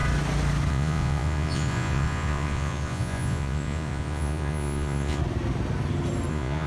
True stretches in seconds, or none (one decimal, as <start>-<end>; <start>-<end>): 0.0-0.7; 5.2-6.3